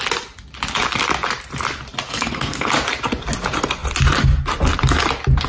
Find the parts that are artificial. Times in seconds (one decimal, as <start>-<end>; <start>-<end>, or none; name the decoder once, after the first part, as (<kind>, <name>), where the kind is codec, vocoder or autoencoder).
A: 2.1-2.7 (codec, SNAC)